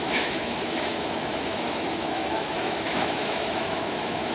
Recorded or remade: remade